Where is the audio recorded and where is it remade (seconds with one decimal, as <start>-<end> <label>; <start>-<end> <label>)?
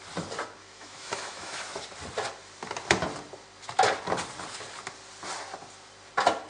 0.0-0.6 recorded; 0.6-1.6 remade; 1.6-6.5 recorded